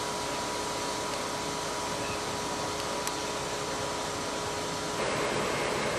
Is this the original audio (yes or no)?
yes